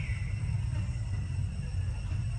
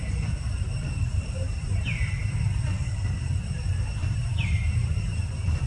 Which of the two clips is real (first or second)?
first